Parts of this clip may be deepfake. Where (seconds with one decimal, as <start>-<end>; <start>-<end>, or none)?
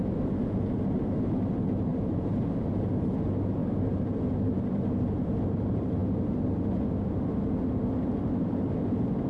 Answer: 1.9-2.6; 3.6-4.7